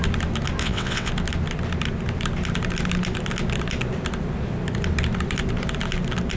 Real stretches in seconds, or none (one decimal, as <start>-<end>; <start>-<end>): 0.0-0.6; 1.1-6.4